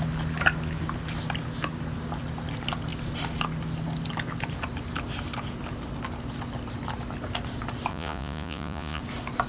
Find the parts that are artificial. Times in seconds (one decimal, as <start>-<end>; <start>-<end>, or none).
7.9-9.0